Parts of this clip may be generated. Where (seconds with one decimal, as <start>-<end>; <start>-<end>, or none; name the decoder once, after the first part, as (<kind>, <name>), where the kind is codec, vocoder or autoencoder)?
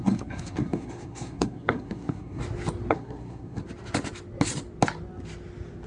0.0-2.4 (codec, SNAC); 2.9-3.6